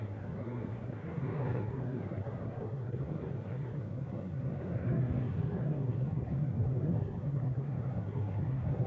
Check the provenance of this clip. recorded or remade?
remade